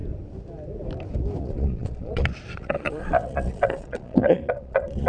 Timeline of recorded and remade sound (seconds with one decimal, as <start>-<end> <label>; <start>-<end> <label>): 0.0-1.4 recorded; 1.4-5.1 remade